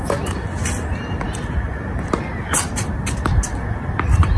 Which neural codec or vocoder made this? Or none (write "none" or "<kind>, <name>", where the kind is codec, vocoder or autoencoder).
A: none